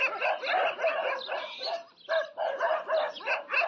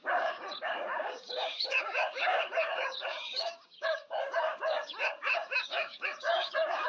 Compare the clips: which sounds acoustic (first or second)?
first